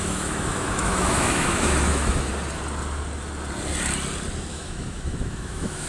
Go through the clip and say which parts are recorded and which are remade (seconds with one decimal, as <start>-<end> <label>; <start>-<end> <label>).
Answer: 0.0-2.3 remade; 2.3-4.5 recorded; 4.5-5.9 remade